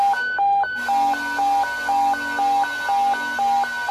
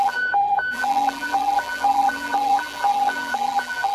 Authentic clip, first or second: first